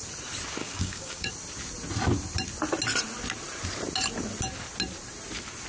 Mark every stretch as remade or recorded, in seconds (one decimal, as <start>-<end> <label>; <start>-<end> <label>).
0.0-0.6 recorded; 0.6-1.3 remade; 1.3-5.7 recorded